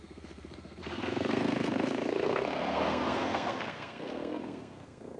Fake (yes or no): yes